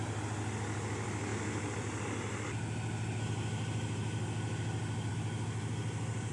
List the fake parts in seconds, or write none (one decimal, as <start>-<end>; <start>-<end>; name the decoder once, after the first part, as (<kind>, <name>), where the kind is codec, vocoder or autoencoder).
none